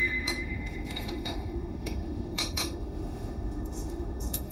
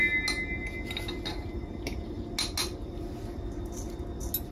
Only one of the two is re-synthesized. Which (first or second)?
first